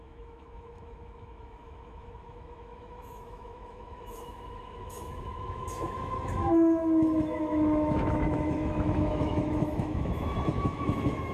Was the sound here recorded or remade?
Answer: remade